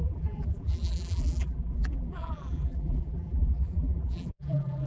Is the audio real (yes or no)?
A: no